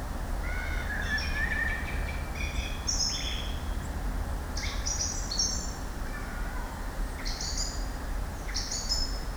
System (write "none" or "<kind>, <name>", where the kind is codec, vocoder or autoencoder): none